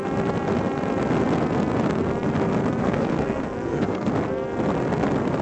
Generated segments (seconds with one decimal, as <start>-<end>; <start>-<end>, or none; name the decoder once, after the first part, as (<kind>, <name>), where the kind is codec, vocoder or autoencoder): 2.8-4.1 (codec, SNAC)